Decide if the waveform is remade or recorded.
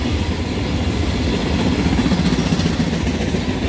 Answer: recorded